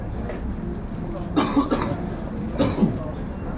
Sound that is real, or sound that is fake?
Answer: real